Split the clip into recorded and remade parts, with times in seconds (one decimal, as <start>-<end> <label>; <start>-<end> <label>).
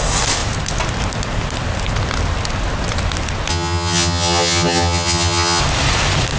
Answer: 0.0-3.5 recorded; 3.5-5.6 remade; 5.6-6.4 recorded